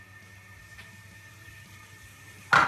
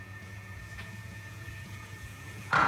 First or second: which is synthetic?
second